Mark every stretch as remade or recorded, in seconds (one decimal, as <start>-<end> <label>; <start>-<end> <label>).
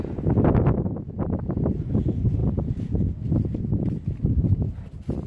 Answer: 0.0-5.3 recorded